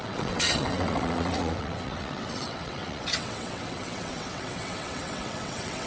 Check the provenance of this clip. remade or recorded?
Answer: remade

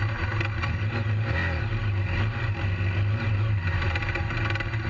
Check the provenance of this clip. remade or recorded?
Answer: recorded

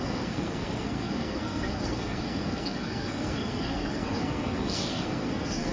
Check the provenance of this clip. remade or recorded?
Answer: remade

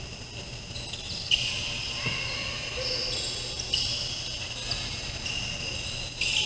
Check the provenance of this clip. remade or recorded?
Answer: recorded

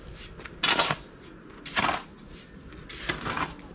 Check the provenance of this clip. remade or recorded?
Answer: recorded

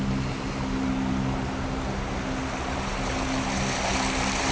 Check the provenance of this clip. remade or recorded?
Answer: recorded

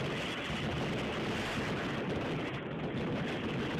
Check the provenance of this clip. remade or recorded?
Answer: recorded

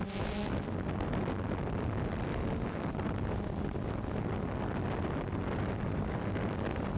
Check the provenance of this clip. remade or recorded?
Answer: recorded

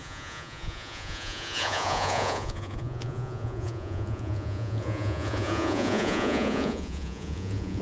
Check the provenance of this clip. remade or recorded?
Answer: remade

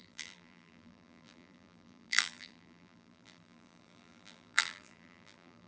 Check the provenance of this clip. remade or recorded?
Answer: remade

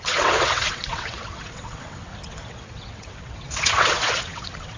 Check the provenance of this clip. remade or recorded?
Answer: remade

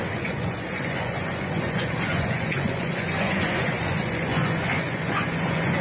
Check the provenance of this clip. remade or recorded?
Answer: remade